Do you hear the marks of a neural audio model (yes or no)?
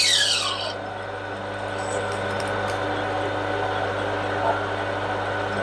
no